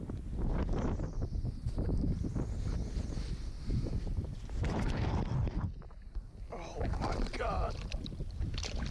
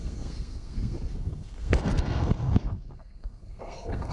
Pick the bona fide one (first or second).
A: first